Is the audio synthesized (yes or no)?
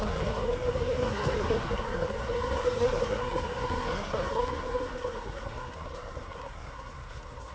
yes